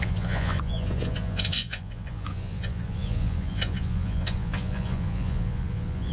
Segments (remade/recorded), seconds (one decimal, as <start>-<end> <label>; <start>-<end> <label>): 0.0-6.1 remade